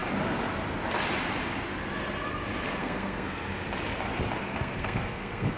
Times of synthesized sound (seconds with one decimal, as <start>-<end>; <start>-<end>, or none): 2.8-3.4; 4.4-5.6

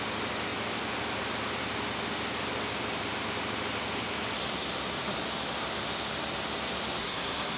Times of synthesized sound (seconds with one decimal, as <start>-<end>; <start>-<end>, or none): 7.0-7.6

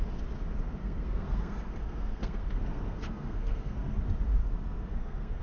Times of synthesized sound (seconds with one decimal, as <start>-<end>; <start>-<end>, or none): 0.8-4.0; 4.4-5.4

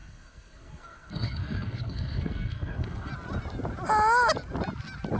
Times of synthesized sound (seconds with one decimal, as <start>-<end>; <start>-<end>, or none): 0.0-3.1